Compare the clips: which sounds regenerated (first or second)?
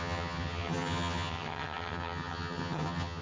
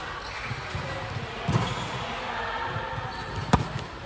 first